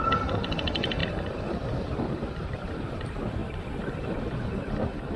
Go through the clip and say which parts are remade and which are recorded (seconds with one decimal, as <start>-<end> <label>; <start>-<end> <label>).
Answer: 0.0-1.0 recorded; 1.0-2.7 remade; 2.7-3.4 recorded; 3.4-4.1 remade; 4.1-5.2 recorded